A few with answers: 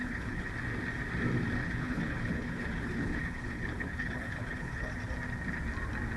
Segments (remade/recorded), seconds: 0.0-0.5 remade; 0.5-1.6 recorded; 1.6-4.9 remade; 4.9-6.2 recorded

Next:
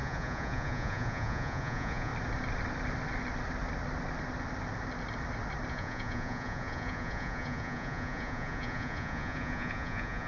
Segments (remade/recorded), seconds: 0.0-2.1 remade; 2.1-5.7 recorded; 5.7-10.3 remade

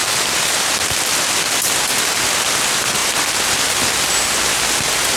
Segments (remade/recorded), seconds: 0.0-5.2 recorded

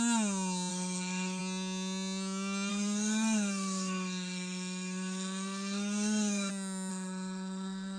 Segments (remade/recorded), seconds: 0.0-0.7 recorded; 0.7-1.4 remade; 1.4-2.7 recorded; 2.7-6.5 remade; 6.5-6.9 recorded; 6.9-8.0 remade

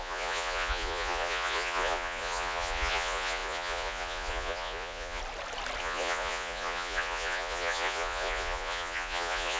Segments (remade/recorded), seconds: 0.0-5.2 remade; 5.2-5.8 recorded; 5.8-9.6 remade

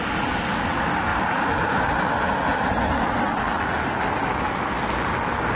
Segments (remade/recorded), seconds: 0.0-1.1 recorded; 1.1-2.0 remade; 2.0-5.6 recorded

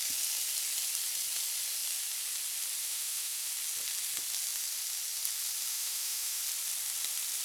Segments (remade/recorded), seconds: 0.0-2.8 recorded; 2.8-3.5 remade; 3.5-5.7 recorded; 5.7-6.4 remade; 6.4-7.4 recorded

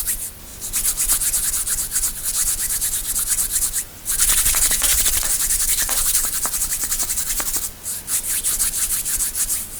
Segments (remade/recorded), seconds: 0.0-4.9 recorded; 4.9-7.5 remade; 7.5-9.8 recorded